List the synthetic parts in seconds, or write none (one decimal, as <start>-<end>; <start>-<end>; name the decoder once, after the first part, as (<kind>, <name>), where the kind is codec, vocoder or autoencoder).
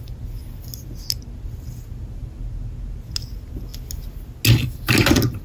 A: none